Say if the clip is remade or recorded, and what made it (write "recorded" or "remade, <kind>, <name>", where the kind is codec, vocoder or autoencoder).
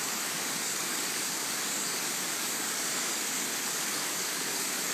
remade, codec, DAC